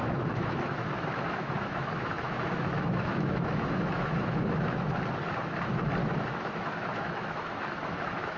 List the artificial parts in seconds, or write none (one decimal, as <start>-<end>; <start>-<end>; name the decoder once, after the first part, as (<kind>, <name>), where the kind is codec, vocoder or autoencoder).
0.0-5.0 (autoencoder, DAC-VAE); 6.0-8.4

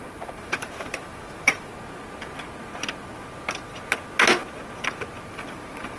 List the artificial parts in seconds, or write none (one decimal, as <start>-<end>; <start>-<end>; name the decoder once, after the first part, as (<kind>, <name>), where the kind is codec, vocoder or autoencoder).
0.0-1.7 (vocoder, BigVGAN v2); 5.3-6.0

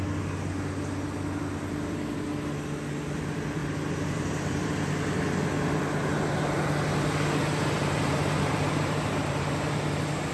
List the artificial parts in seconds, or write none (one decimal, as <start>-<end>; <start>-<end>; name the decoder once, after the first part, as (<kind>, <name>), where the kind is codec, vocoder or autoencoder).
3.6-4.7 (vocoder, BigVGAN v2); 7.8-9.5

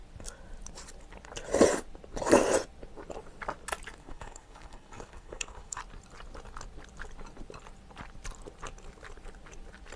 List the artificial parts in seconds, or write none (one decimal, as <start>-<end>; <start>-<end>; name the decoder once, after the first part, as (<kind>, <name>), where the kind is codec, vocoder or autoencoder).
4.0-5.8 (codec, SNAC)

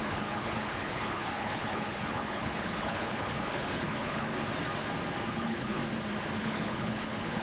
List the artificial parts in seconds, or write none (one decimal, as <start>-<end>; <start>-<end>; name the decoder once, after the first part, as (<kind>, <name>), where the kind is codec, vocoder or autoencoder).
0.0-4.3 (codec, HILCodec); 5.3-5.8; 6.4-7.4